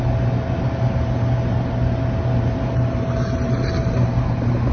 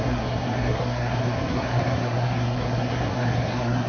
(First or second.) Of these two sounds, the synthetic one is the second